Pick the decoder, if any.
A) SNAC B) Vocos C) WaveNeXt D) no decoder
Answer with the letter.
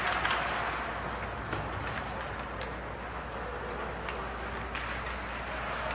D